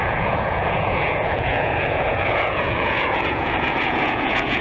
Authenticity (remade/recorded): remade